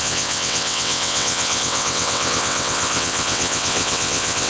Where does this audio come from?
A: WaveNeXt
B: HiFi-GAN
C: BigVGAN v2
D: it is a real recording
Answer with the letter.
A